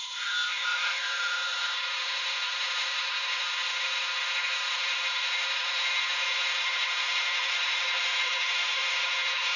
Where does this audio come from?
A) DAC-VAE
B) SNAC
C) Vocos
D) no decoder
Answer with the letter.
A